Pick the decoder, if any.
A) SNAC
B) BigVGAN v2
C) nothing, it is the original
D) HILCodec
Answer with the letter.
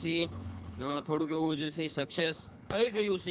D